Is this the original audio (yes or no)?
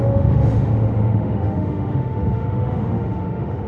no